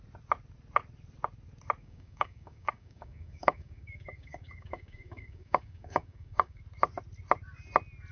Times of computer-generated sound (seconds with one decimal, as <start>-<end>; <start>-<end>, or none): 1.8-6.6